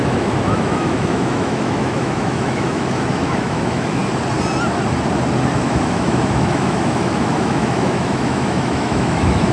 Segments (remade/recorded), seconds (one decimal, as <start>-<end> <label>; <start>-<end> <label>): 0.0-4.0 remade; 4.0-5.6 recorded; 5.6-9.5 remade